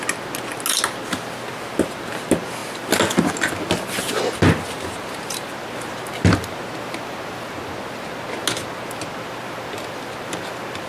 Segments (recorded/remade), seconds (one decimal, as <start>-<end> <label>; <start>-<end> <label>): 0.0-10.9 recorded